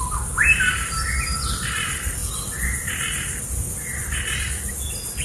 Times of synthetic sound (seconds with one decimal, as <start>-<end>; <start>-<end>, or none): none